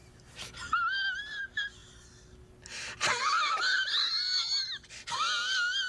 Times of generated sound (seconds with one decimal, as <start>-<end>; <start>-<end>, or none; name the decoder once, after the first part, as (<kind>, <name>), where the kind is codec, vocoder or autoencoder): none